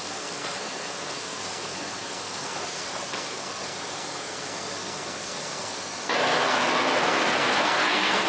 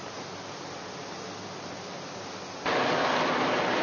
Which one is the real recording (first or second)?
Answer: second